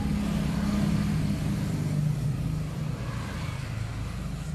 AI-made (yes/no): no